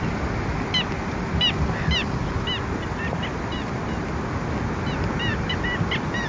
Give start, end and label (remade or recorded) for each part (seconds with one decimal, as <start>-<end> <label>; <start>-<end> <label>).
0.0-6.3 recorded

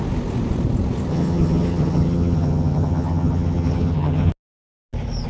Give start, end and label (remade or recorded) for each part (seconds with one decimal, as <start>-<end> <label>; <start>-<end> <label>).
0.0-1.1 recorded; 1.1-4.3 remade; 4.3-5.3 recorded

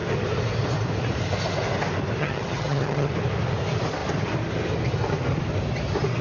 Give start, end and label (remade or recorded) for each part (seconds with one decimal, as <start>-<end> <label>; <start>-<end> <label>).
0.0-2.2 recorded; 2.2-3.1 remade; 3.1-6.2 recorded